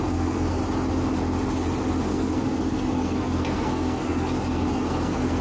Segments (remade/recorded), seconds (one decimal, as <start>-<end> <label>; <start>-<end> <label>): 0.0-0.6 remade; 0.6-2.0 recorded; 2.0-5.4 remade